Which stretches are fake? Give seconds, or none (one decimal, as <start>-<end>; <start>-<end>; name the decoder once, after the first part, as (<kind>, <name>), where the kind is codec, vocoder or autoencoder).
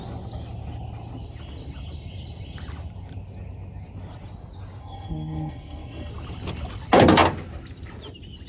4.8-6.1 (codec, SNAC)